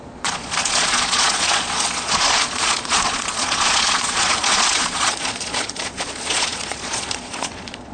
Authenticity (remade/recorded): remade